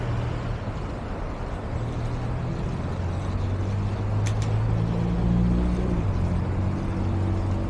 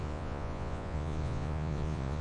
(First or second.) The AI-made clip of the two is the second